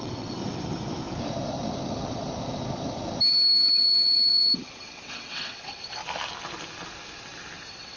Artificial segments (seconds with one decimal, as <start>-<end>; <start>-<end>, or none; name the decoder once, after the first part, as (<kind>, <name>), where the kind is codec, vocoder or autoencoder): 0.0-0.4 (vocoder, WaveNeXt); 3.7-6.0; 7.6-8.0